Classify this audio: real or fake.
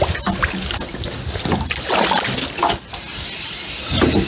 real